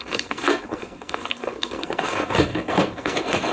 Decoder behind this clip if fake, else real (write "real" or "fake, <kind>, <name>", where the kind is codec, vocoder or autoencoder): fake, codec, SNAC